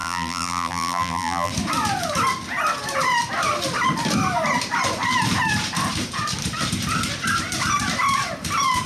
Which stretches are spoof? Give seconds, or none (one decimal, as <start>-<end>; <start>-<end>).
0.0-1.5